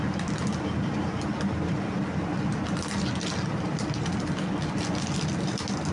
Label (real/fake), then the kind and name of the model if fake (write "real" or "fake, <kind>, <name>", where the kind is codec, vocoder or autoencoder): real